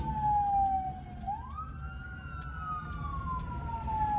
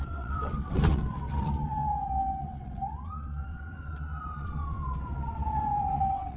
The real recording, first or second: first